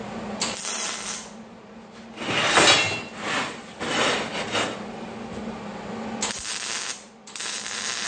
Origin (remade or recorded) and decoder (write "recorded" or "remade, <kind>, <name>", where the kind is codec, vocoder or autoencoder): recorded